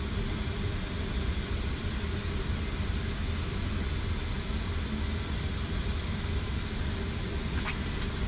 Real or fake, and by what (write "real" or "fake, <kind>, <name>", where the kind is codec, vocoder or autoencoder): real